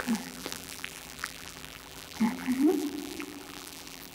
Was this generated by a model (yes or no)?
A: yes